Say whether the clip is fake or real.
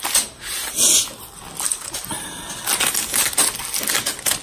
real